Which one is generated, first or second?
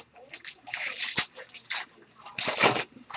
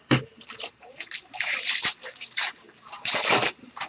second